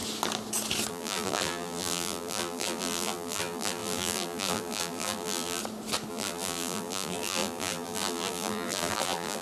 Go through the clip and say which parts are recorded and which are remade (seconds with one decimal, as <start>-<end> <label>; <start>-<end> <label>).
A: 0.0-0.9 recorded; 0.9-5.6 remade; 5.6-6.1 recorded; 6.1-9.4 remade